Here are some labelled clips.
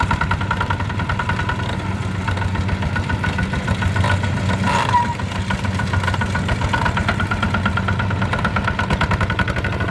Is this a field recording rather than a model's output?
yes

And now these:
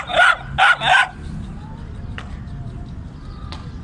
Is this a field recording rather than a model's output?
yes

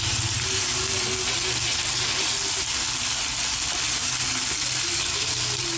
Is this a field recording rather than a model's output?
yes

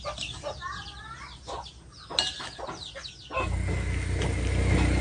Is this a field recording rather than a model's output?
yes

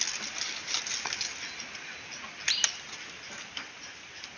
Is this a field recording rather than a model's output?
yes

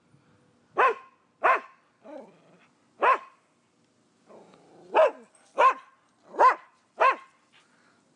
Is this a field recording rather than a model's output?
yes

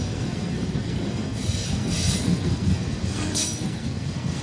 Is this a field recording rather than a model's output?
no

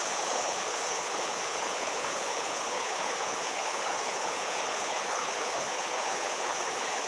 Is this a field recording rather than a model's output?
no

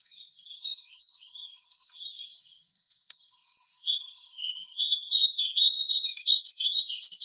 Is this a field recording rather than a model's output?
no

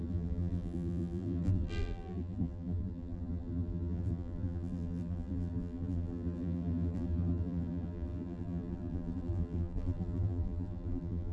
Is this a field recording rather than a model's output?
no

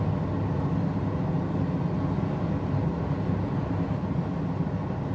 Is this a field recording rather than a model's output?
yes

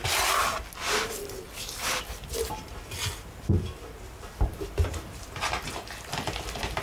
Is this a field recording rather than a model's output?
yes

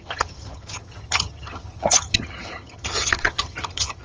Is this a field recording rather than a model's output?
no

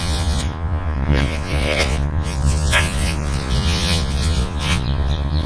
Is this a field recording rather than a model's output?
no